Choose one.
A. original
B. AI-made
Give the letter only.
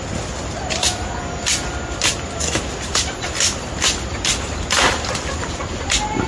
A